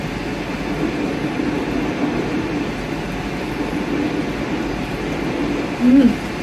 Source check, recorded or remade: recorded